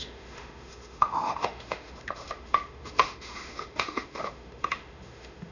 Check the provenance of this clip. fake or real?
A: fake